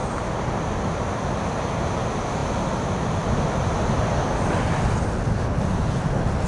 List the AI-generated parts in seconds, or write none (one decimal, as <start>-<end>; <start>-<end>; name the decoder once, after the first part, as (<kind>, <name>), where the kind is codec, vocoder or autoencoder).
none